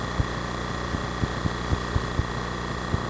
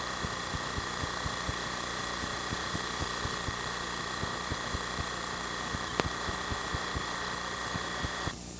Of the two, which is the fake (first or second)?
second